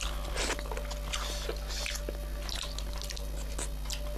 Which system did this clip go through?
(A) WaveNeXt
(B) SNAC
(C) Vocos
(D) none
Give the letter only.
D